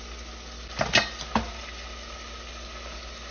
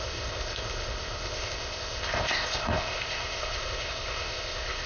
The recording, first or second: first